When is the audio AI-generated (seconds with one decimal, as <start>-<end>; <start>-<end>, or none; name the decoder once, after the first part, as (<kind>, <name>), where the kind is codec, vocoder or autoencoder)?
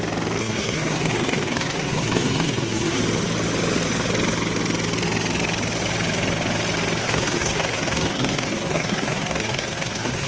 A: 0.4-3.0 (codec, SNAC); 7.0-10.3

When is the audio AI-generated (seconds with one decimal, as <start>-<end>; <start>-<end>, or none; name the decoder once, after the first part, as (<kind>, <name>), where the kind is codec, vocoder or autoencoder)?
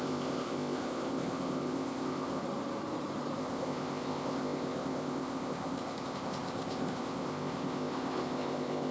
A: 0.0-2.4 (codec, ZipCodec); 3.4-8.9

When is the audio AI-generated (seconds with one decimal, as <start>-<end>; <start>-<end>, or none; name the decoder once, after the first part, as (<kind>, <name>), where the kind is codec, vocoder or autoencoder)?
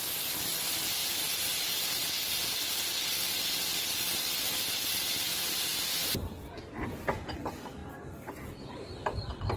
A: 0.0-1.0 (vocoder, BigVGAN v2); 4.9-7.8; 8.5-9.6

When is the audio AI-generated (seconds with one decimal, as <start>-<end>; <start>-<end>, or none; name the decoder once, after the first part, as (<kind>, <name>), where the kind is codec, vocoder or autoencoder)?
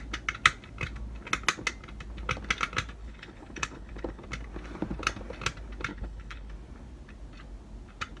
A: 3.0-4.2 (codec, HILCodec); 5.9-6.5